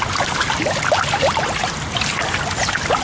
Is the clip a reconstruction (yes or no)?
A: no